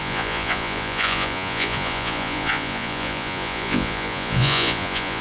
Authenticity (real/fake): fake